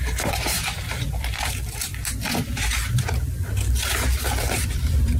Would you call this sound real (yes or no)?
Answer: no